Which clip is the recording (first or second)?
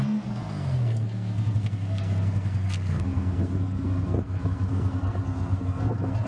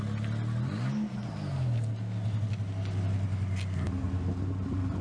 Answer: second